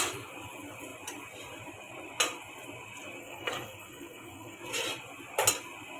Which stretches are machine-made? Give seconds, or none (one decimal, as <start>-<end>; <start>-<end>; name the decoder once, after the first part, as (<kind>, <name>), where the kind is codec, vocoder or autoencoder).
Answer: 3.2-4.6 (codec, SNAC)